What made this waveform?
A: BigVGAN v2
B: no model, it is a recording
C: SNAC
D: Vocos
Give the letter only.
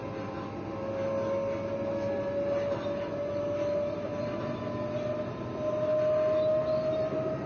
B